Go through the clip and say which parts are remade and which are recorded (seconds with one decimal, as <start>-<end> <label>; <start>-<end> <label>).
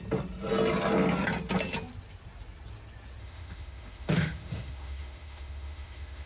0.0-3.2 recorded; 3.2-6.3 remade